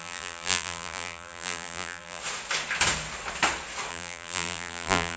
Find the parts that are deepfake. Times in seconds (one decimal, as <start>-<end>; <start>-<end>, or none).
0.0-2.2; 3.9-5.2